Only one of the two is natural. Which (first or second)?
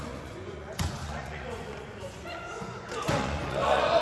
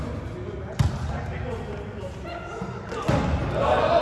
second